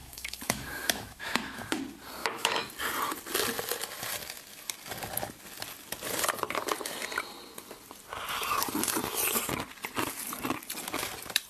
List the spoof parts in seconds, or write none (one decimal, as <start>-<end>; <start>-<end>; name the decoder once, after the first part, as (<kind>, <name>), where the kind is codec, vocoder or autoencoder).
0.0-1.8 (autoencoder, DAC-VAE); 2.2-2.7